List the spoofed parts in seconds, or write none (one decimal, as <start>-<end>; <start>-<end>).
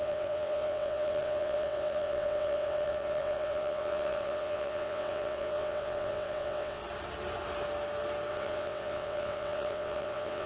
0.0-6.8; 8.3-10.5